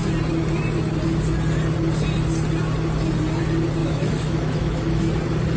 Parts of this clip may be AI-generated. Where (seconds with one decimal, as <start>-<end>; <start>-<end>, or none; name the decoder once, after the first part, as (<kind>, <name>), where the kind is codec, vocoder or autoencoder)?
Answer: 3.8-5.0 (autoencoder, DAC-VAE)